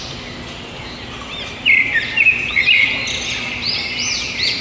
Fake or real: real